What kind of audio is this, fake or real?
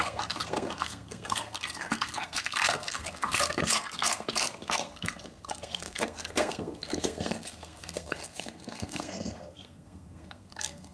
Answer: fake